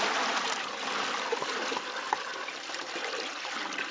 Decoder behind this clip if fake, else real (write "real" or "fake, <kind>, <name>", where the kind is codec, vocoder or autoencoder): fake, vocoder, BigVGAN v2